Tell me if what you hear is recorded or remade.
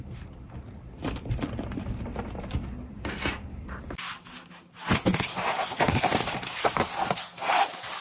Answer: recorded